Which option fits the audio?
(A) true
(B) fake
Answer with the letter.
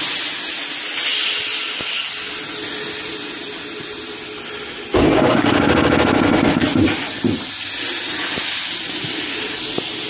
A